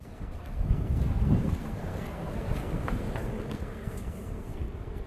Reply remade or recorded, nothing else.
remade